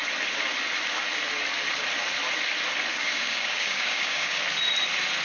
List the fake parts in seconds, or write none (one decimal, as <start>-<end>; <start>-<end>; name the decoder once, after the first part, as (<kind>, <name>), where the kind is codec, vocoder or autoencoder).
2.9-4.4 (codec, DAC)